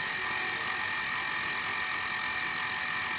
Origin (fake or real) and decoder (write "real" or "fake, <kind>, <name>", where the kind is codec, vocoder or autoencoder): real